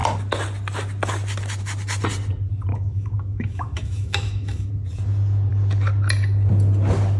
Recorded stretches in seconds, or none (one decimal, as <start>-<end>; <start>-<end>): 0.0-2.7; 4.7-7.2